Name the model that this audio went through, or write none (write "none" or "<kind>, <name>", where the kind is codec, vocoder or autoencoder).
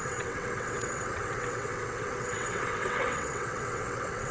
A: vocoder, WaveNeXt